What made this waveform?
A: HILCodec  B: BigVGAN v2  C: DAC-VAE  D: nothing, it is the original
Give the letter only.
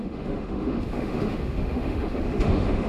C